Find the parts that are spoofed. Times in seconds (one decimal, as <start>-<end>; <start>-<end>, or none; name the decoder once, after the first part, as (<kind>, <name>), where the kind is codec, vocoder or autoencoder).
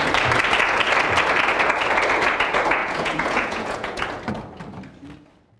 2.8-4.0 (vocoder, Vocos)